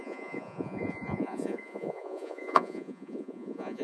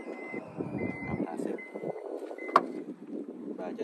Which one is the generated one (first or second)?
first